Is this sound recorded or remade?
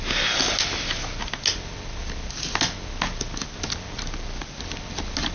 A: recorded